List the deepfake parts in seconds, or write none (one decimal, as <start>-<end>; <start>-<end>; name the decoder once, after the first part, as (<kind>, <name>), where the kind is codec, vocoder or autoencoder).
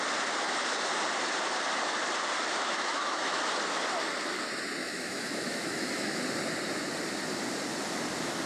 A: 2.5-3.4 (autoencoder, DAC-VAE); 4.8-6.2